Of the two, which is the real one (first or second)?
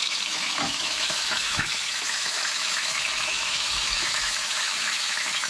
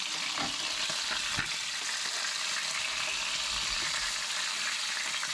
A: second